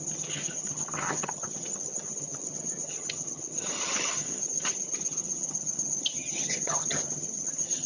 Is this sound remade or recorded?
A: remade